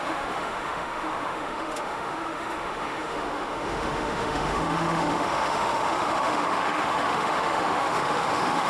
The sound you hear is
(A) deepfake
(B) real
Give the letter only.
A